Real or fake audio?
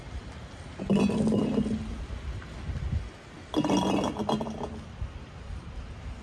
real